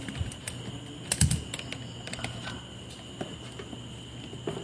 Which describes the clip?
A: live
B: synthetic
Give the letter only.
A